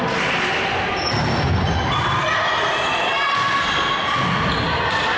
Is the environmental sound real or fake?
real